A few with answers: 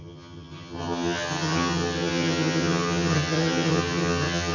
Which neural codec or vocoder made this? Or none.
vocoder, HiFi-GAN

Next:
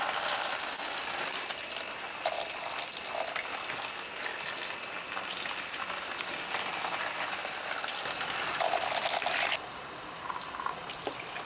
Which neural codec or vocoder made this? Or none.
none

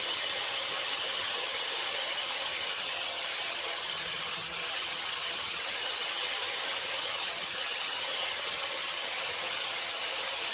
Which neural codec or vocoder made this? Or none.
vocoder, HiFi-GAN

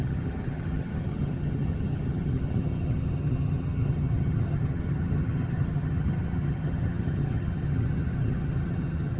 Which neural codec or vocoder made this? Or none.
vocoder, HiFi-GAN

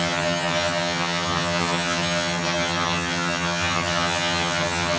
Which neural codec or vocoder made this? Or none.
vocoder, HiFi-GAN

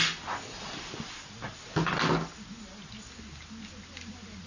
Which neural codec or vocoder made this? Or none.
none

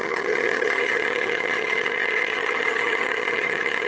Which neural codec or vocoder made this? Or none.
vocoder, HiFi-GAN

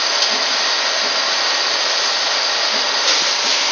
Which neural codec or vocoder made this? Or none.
none